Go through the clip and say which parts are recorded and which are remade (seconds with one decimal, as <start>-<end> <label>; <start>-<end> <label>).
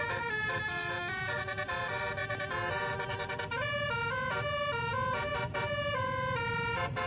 0.0-2.2 remade; 2.2-3.7 recorded; 3.7-7.1 remade